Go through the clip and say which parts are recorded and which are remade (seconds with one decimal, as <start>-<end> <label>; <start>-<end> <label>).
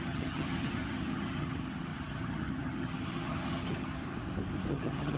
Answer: 0.0-4.0 remade; 4.0-4.7 recorded; 4.7-5.2 remade